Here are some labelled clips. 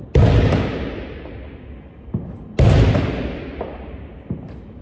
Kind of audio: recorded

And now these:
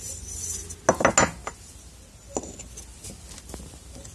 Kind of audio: recorded